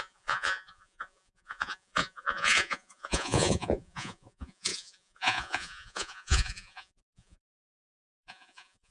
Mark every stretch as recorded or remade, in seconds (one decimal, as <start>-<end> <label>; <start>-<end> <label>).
0.0-8.9 remade